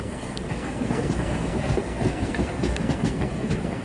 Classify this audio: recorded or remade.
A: remade